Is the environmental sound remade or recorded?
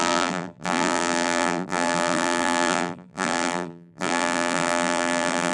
remade